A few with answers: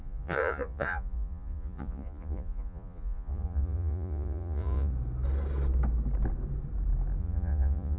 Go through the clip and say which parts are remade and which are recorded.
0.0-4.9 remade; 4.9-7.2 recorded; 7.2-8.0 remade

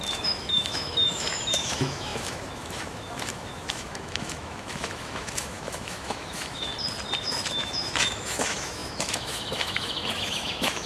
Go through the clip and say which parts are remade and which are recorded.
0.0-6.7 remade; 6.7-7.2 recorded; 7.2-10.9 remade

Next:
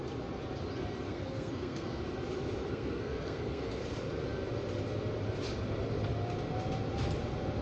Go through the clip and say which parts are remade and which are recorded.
0.0-1.1 recorded; 1.1-2.0 remade; 2.0-2.7 recorded; 2.7-3.8 remade; 3.8-7.6 recorded